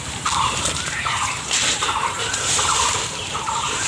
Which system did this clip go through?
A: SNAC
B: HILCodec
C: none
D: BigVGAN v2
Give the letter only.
D